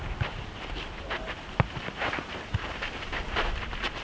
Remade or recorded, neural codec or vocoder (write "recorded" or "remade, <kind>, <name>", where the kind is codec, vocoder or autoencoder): remade, vocoder, BigVGAN v2